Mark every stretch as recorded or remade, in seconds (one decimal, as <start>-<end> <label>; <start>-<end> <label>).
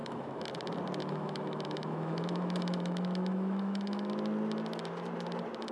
0.0-0.5 remade; 0.5-1.0 recorded; 1.0-4.1 remade; 4.1-5.7 recorded